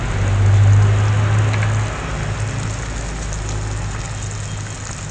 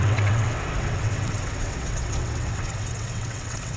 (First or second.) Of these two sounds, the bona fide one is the first